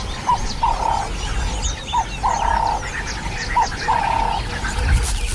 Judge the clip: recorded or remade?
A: recorded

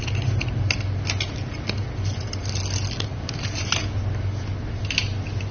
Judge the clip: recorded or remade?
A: recorded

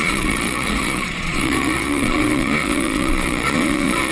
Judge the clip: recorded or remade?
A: remade